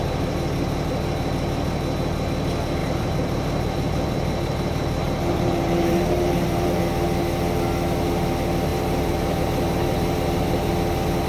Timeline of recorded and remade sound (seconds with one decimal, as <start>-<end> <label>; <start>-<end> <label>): 0.0-2.8 recorded; 2.8-6.8 remade; 6.8-8.7 recorded; 8.7-10.7 remade; 10.7-11.3 recorded